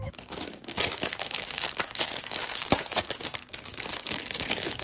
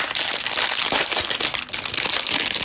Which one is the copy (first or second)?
first